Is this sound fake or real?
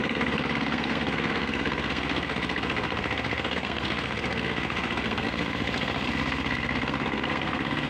fake